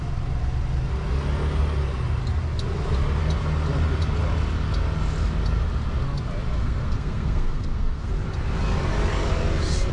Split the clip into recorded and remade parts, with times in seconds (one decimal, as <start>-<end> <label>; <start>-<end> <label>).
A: 0.0-6.6 recorded; 6.6-8.1 remade; 8.1-9.9 recorded